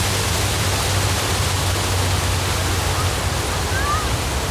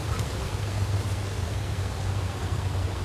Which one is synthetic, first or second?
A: second